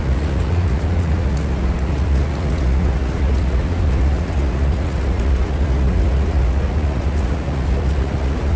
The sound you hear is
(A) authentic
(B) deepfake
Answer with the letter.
B